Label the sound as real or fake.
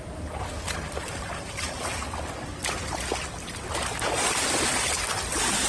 real